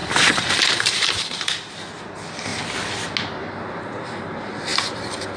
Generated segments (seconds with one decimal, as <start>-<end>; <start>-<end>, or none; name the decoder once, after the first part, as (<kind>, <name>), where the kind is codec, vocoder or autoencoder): 0.0-2.5 (vocoder, BigVGAN v2); 3.8-5.4